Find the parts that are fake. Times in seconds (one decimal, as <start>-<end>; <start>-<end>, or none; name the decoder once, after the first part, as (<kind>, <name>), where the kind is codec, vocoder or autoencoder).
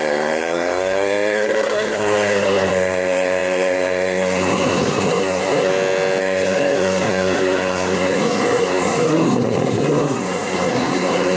0.0-5.7 (codec, SNAC); 6.2-11.4